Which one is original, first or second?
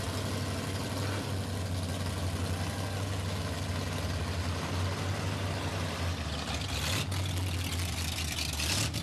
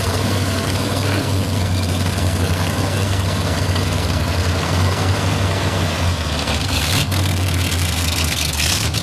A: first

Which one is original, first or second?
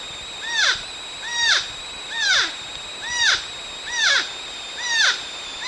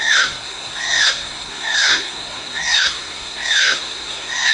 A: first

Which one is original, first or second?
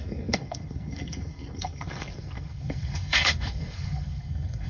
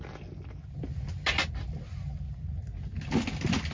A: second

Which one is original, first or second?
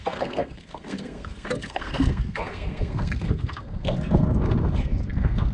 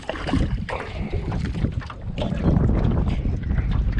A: second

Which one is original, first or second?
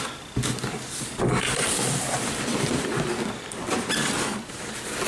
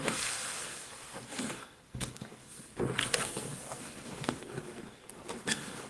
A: first